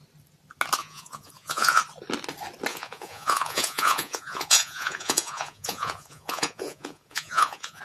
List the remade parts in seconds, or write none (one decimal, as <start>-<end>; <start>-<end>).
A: 0.8-1.8; 2.7-7.8